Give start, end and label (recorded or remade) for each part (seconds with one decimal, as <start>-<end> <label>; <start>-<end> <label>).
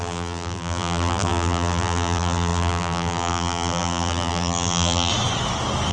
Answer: 0.0-5.1 remade; 5.1-5.9 recorded